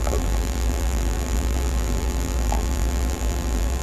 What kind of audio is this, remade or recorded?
remade